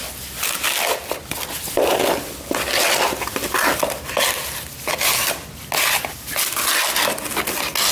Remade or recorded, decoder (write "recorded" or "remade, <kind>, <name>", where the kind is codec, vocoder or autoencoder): recorded